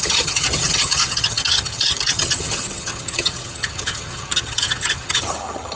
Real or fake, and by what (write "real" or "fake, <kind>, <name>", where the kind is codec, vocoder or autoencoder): fake, vocoder, HiFi-GAN